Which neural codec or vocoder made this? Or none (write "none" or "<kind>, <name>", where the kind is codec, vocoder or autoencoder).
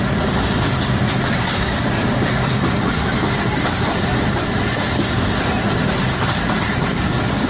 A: none